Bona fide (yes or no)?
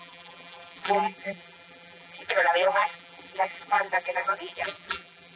no